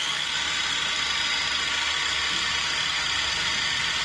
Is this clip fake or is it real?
real